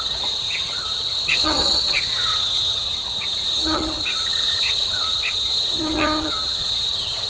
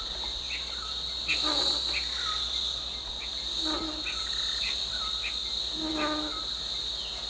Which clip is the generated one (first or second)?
first